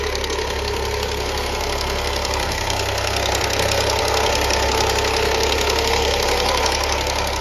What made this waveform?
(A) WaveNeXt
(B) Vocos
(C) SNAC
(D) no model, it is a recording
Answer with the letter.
C